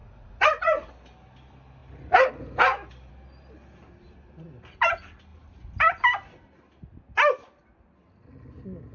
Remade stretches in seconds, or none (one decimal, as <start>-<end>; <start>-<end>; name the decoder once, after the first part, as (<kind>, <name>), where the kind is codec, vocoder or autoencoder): 0.0-0.9 (vocoder, Vocos)